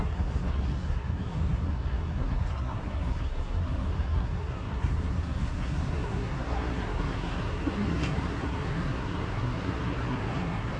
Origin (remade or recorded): remade